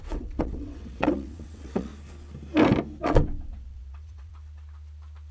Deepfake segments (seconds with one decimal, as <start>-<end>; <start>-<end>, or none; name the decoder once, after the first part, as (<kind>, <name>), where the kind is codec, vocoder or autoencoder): 0.0-1.9 (vocoder, WaveNeXt); 3.0-4.3